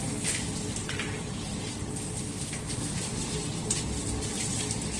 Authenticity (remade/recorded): recorded